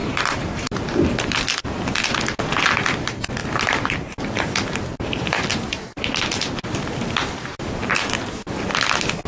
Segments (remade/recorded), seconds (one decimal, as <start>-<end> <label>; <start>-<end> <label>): 0.0-1.5 remade; 1.5-3.4 recorded; 3.4-8.3 remade; 8.3-9.3 recorded